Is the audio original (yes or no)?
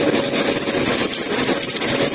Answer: yes